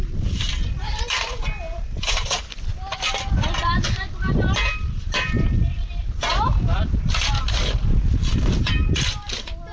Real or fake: fake